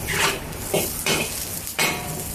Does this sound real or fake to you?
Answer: real